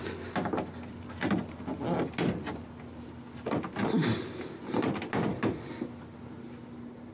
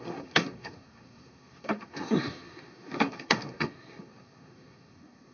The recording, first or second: first